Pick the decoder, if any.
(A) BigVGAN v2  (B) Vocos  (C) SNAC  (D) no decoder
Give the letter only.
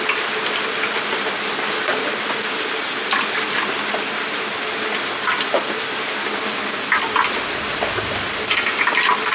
D